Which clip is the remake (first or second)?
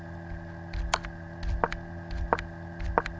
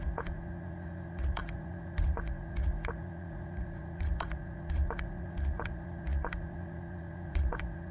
second